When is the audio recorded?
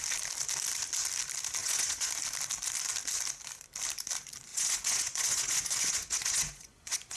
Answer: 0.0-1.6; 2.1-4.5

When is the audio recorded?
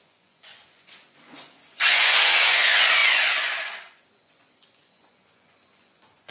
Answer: none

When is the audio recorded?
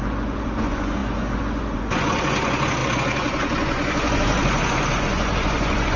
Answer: none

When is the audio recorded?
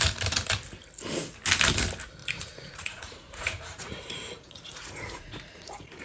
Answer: 0.0-2.2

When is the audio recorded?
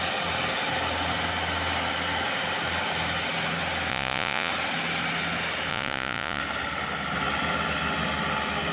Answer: 0.0-3.9; 4.5-5.7; 6.4-8.7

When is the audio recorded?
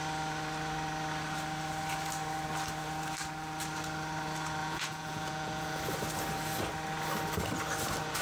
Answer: 0.0-4.6; 5.8-8.2